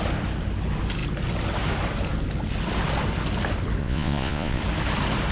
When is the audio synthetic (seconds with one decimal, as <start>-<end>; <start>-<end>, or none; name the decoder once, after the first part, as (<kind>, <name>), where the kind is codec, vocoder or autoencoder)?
3.8-4.6 (vocoder, Vocos)